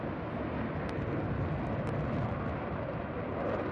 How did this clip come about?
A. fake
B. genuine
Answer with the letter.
B